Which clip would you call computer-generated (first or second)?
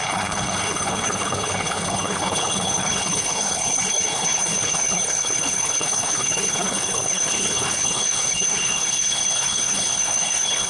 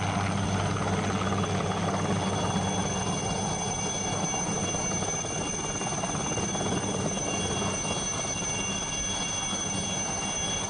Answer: first